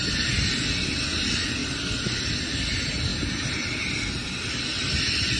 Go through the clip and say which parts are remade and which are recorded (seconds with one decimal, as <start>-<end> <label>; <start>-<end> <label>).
0.0-1.6 recorded; 1.6-2.3 remade; 2.3-5.4 recorded